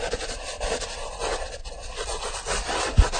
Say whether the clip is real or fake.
real